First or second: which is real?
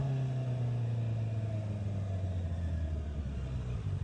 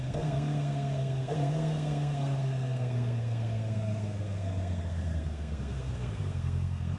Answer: first